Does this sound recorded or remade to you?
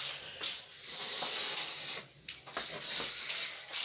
recorded